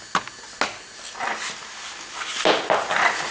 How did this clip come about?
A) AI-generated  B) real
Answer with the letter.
B